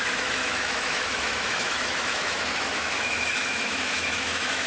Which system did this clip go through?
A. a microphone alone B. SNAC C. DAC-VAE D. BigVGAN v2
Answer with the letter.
C